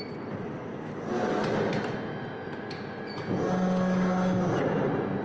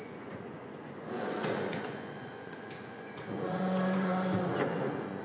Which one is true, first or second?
first